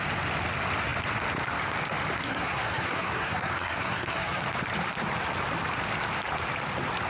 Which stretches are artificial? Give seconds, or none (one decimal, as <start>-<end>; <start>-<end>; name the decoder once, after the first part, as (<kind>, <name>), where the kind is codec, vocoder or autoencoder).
2.2-4.4 (codec, SNAC)